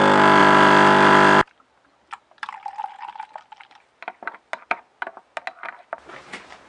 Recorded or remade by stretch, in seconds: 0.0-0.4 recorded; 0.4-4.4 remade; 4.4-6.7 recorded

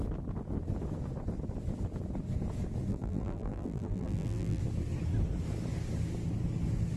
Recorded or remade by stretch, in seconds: 0.0-2.9 recorded; 2.9-4.6 remade; 4.6-7.0 recorded

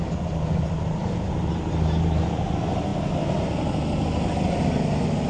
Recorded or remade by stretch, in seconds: 0.0-1.0 recorded; 1.0-2.5 remade; 2.5-5.3 recorded

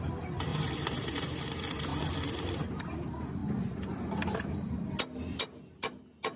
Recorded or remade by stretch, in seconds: 0.0-0.5 recorded; 0.5-1.4 remade; 1.4-6.4 recorded

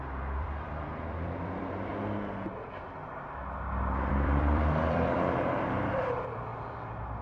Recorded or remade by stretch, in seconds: 0.0-1.9 remade; 1.9-4.1 recorded; 4.1-6.5 remade; 6.5-7.2 recorded

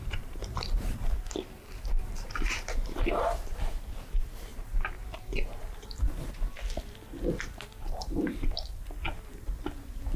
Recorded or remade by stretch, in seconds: 0.0-3.9 remade; 3.9-10.2 recorded

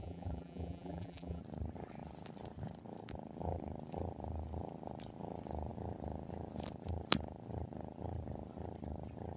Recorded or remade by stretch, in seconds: 0.0-1.4 remade; 1.4-9.4 recorded

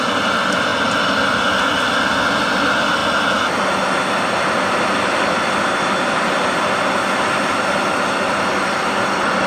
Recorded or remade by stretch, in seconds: 0.0-9.5 recorded